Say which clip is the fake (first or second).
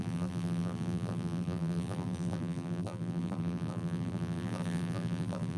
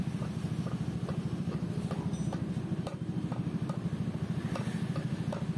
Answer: first